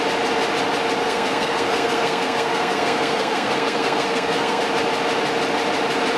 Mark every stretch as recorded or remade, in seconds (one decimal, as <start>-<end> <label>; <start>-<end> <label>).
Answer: 0.0-1.0 recorded; 1.0-4.6 remade; 4.6-6.2 recorded